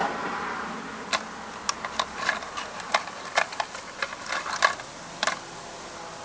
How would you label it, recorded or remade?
recorded